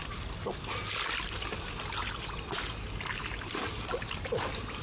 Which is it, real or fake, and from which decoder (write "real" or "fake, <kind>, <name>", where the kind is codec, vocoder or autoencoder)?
real